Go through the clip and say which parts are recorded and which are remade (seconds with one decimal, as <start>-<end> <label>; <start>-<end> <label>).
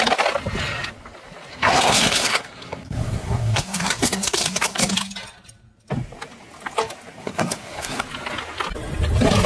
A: 0.0-1.5 recorded; 1.5-4.9 remade; 4.9-7.2 recorded; 7.2-8.0 remade; 8.0-9.5 recorded